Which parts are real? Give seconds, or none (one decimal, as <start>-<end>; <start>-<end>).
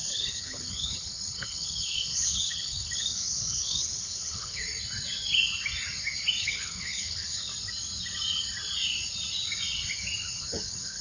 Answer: 4.6-6.4; 7.5-10.4